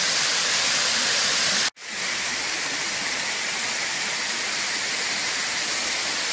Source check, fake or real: real